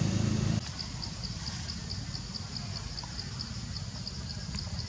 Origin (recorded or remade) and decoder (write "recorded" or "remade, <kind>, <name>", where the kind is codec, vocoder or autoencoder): recorded